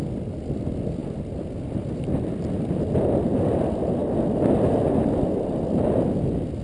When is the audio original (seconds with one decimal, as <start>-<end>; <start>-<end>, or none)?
0.0-6.6